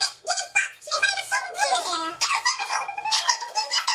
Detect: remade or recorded remade